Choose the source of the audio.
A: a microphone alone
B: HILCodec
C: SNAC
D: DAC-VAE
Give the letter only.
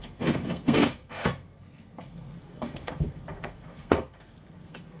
C